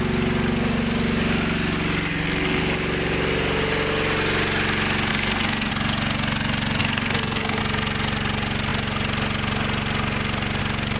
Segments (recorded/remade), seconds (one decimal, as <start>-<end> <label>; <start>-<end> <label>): 0.0-2.1 recorded; 2.1-2.6 remade; 2.6-5.1 recorded; 5.1-5.7 remade; 5.7-6.8 recorded; 6.8-7.6 remade; 7.6-11.0 recorded